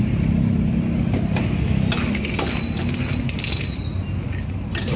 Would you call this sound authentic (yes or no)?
yes